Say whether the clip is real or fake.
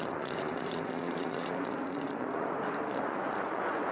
fake